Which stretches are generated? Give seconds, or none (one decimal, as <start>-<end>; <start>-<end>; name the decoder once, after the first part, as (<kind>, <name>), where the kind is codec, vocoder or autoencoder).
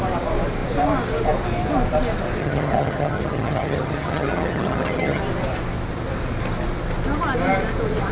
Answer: 2.4-5.2 (vocoder, HiFi-GAN)